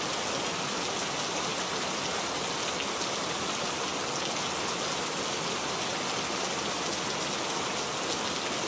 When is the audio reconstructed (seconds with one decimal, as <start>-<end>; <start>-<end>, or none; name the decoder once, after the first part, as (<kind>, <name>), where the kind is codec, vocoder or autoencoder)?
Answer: none